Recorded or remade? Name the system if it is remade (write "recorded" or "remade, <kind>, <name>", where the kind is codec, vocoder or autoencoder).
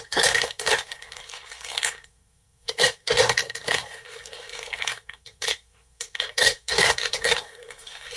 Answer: remade, codec, SNAC